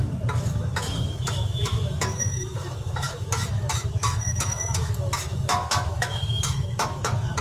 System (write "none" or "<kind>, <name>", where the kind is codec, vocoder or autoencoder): autoencoder, DAC-VAE